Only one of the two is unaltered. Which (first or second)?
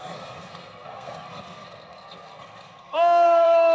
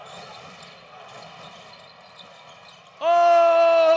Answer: second